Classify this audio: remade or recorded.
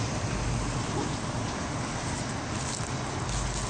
recorded